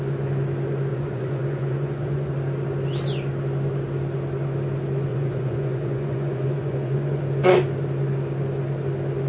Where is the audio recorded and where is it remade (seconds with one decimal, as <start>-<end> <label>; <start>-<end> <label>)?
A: 0.0-0.9 recorded; 0.9-2.3 remade; 2.3-5.1 recorded; 5.1-7.2 remade; 7.2-9.3 recorded